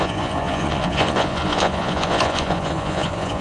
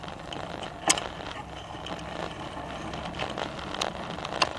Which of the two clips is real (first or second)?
second